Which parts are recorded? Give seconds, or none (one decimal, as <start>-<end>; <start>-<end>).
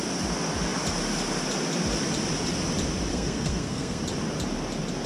0.0-3.1; 4.0-5.1